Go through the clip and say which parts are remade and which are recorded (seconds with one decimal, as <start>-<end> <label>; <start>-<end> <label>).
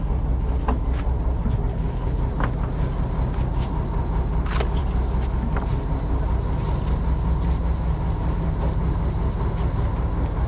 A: 0.0-1.7 recorded; 1.7-2.2 remade; 2.2-10.5 recorded